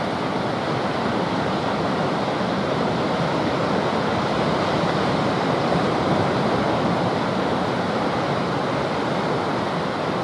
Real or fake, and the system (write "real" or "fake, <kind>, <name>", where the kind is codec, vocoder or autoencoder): real